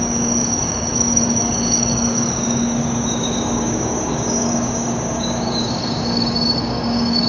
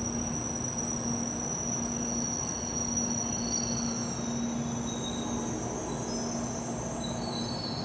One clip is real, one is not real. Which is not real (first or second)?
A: first